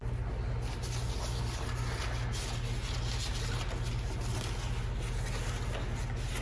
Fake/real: real